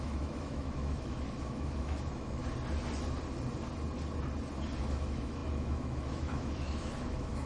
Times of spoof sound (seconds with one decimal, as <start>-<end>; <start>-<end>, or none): 0.0-2.4; 4.8-7.5